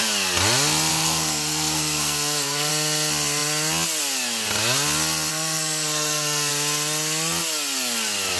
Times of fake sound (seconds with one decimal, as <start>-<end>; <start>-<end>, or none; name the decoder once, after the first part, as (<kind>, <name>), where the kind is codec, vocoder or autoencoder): 0.9-2.7 (codec, SNAC); 5.3-6.5